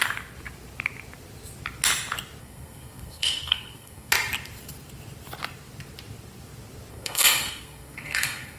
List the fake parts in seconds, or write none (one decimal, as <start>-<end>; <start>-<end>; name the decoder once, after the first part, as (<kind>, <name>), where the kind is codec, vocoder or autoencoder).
2.4-4.1 (codec, SNAC); 6.9-8.6